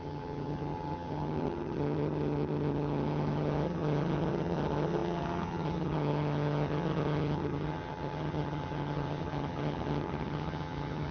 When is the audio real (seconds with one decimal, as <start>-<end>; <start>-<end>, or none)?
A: none

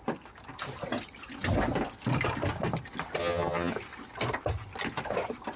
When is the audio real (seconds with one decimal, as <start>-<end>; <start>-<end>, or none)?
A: 0.0-3.2; 3.7-5.6

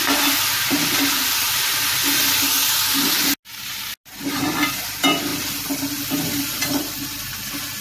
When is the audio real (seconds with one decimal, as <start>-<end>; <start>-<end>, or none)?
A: 0.0-7.8

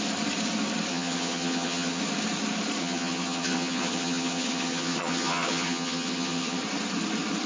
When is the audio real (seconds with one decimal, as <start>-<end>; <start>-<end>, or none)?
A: 0.0-0.9; 2.0-2.8; 6.6-7.5

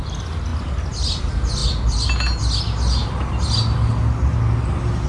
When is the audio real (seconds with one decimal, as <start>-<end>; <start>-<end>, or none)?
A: 0.0-5.1

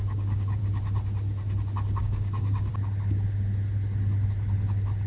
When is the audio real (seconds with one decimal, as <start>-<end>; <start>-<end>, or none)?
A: 0.6-2.0; 2.7-5.1

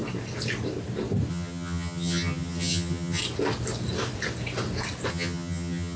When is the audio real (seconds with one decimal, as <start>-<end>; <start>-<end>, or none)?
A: 0.0-1.3; 3.2-5.1